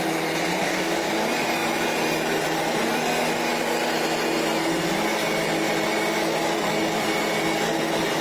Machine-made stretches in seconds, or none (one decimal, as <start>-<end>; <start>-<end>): 0.6-1.1